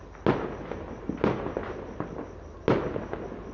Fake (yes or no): no